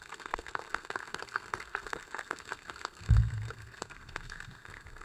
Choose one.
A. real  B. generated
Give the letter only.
B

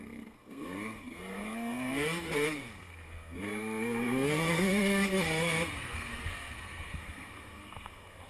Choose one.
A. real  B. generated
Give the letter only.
B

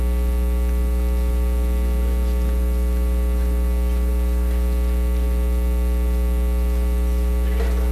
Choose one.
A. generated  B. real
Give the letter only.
B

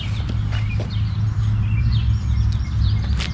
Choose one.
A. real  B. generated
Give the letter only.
A